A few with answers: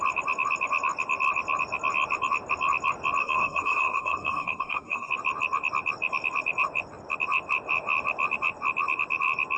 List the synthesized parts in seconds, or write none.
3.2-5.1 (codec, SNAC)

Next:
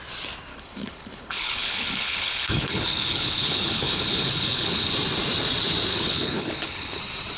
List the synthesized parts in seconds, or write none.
0.5-4.9 (codec, HILCodec); 5.9-7.0

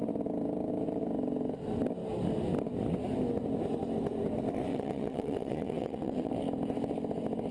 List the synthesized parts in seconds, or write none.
4.7-6.3 (vocoder, WaveNeXt)

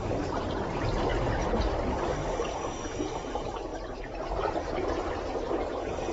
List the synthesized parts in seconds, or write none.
none